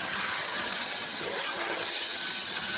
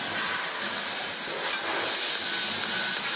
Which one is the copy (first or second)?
first